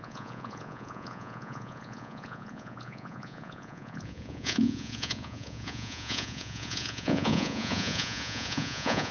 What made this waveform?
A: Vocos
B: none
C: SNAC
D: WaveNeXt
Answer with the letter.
A